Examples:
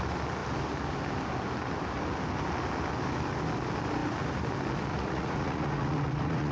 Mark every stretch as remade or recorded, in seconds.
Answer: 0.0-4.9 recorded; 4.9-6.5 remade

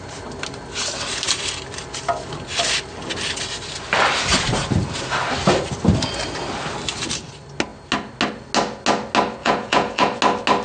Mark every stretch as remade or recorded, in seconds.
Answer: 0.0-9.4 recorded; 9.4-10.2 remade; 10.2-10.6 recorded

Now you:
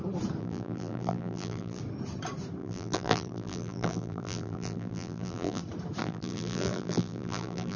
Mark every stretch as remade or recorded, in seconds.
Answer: 0.0-0.4 recorded; 0.4-1.8 remade; 1.8-2.6 recorded; 2.6-5.6 remade; 5.6-6.0 recorded; 6.0-7.8 remade